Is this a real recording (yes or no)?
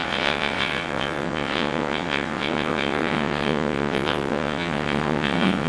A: no